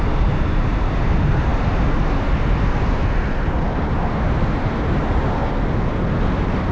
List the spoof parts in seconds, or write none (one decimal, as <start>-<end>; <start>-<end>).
none